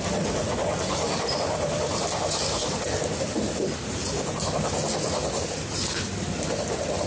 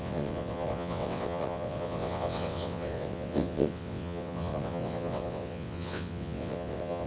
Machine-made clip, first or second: second